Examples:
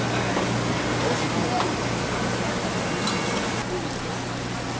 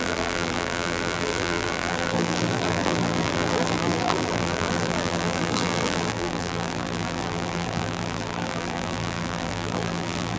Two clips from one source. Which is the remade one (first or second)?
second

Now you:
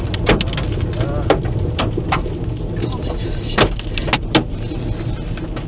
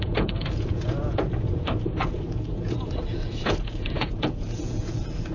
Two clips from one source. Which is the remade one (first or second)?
second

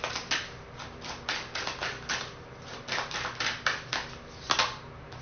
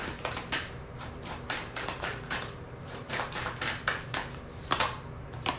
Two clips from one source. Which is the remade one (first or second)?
second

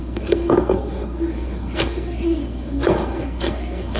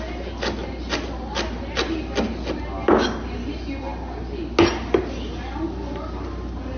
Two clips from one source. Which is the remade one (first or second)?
first